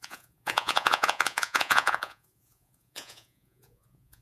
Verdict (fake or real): fake